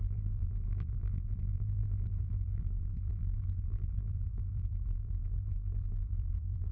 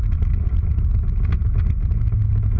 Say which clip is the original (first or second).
second